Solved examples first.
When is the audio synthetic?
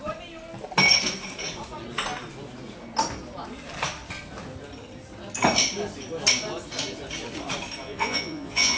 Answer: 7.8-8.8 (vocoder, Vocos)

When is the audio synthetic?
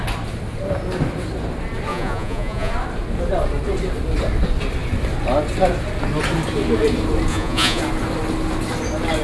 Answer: 1.9-2.7 (vocoder, Vocos); 7.3-7.8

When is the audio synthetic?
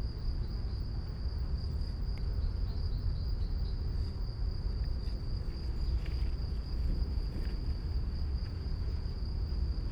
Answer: 6.4-7.6 (vocoder, Vocos); 8.4-9.5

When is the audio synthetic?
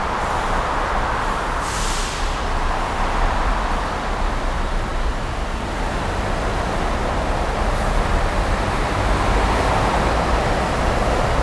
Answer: none